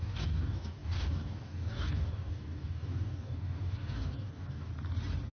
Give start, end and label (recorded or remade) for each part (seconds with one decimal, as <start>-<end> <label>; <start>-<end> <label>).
0.0-4.7 remade; 4.7-5.4 recorded